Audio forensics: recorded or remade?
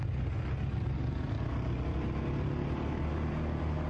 recorded